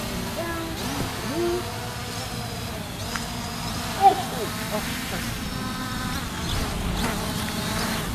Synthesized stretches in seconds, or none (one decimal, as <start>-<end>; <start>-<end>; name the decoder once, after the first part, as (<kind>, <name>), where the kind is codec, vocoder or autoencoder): none